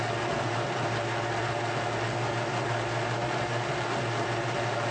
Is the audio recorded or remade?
recorded